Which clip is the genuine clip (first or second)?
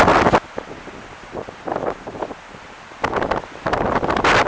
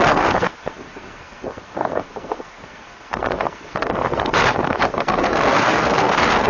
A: first